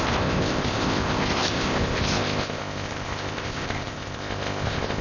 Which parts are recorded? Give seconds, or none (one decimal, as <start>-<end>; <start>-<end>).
none